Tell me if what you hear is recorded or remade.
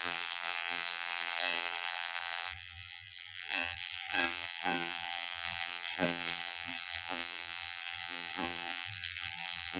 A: remade